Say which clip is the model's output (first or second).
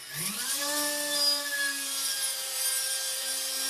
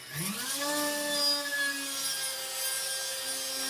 first